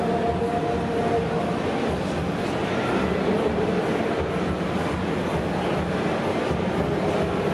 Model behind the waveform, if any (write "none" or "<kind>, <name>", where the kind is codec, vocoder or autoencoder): none